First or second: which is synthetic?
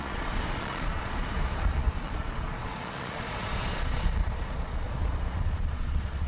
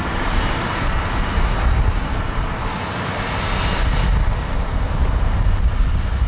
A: first